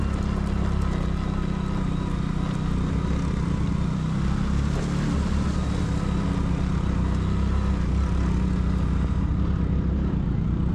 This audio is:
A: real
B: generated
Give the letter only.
A